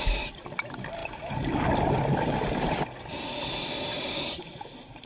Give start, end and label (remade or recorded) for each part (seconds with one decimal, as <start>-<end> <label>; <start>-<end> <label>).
0.0-1.0 recorded; 1.0-4.1 remade; 4.1-5.1 recorded